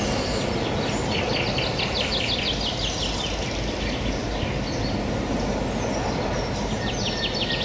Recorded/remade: recorded